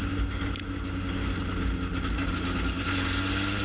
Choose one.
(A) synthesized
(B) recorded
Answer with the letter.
B